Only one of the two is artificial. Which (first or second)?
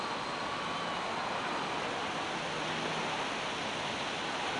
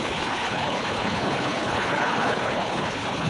second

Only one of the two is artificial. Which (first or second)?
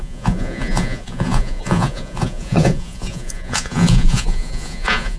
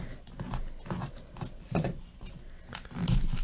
first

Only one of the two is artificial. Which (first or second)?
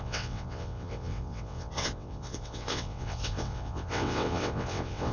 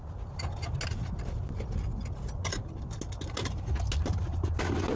first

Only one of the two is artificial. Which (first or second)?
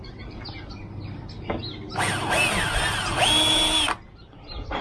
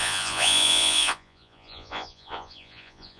second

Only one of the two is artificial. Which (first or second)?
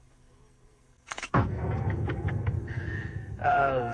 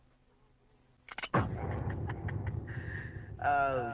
first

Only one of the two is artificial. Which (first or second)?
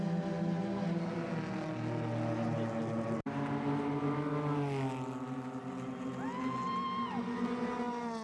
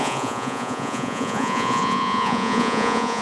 second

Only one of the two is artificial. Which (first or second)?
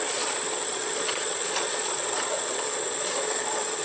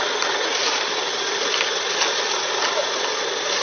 first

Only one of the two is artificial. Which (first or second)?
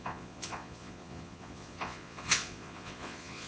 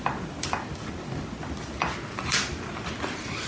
first